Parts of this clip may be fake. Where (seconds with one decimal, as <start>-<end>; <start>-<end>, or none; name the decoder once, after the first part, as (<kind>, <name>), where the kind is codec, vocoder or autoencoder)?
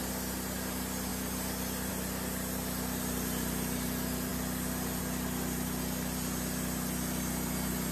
none